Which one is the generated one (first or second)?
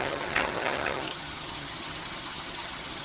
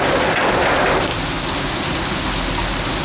first